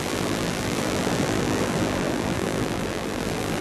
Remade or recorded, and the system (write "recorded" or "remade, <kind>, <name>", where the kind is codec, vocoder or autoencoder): remade, vocoder, BigVGAN v2